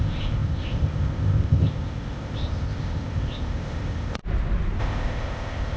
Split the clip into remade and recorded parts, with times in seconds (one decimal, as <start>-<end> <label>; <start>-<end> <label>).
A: 0.0-4.2 remade; 4.2-4.8 recorded; 4.8-5.8 remade